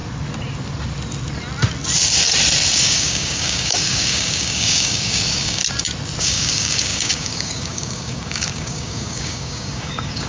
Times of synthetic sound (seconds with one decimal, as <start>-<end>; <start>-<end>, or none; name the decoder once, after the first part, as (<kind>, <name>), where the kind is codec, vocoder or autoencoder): 2.7-5.6 (codec, DAC); 6.2-10.3